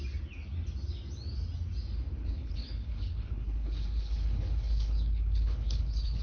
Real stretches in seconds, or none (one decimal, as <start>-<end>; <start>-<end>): 0.0-2.2